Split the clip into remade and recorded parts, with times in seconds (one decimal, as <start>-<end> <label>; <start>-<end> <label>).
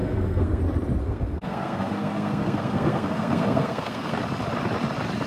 0.0-0.6 remade; 0.6-1.0 recorded; 1.0-4.2 remade; 4.2-5.3 recorded